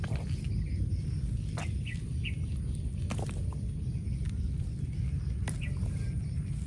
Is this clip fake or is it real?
real